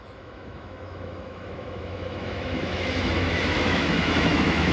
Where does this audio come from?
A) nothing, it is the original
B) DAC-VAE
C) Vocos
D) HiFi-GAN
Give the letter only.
B